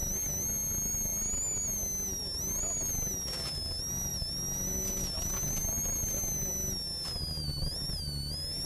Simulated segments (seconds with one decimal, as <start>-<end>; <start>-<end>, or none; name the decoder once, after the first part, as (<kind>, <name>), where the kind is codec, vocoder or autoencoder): none

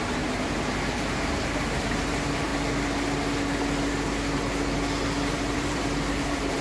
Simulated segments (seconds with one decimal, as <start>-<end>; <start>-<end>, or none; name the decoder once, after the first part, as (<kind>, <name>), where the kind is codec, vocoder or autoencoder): 0.0-2.5 (vocoder, BigVGAN v2); 5.3-6.6

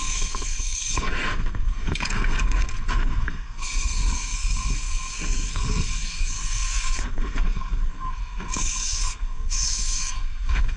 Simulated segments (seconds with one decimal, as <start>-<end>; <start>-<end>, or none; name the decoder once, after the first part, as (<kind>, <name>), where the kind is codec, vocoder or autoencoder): 0.0-10.8 (codec, SNAC)

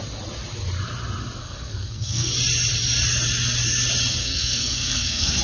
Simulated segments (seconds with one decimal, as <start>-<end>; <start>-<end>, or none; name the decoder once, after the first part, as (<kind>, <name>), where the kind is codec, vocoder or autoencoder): 1.4-2.3 (codec, SNAC); 4.2-5.4

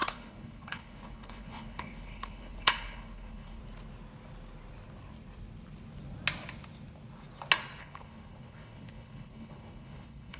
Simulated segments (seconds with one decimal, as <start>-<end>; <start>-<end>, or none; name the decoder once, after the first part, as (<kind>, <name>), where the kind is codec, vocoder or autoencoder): 0.0-3.6 (codec, HILCodec); 7.8-10.4

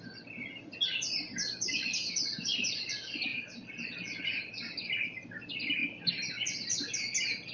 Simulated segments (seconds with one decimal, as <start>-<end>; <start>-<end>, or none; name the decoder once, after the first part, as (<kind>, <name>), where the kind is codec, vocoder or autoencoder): 0.9-1.9 (vocoder, BigVGAN v2); 3.3-3.9

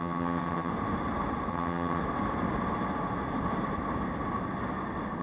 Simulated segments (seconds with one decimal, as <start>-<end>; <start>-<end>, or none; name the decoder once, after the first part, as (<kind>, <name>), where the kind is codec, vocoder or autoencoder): 0.0-0.7 (vocoder, HiFi-GAN); 1.5-2.0